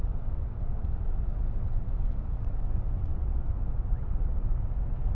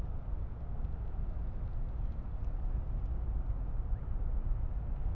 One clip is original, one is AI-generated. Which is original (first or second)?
second